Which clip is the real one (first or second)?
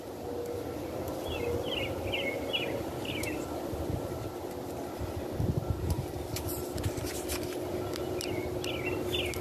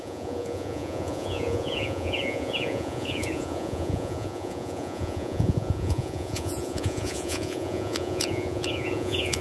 first